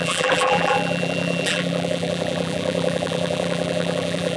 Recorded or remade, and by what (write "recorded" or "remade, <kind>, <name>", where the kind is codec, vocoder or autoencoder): remade, vocoder, BigVGAN v2